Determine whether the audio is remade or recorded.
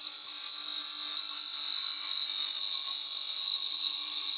recorded